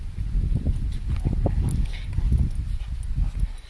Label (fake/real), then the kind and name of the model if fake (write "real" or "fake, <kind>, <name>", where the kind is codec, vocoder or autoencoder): real